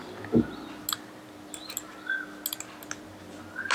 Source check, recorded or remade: recorded